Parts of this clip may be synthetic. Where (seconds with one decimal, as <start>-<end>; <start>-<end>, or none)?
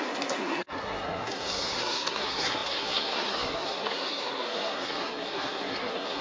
0.0-6.2